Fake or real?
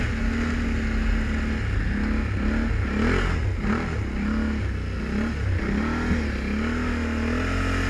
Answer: real